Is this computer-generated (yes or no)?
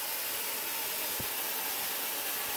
no